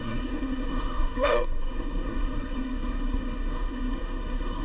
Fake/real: fake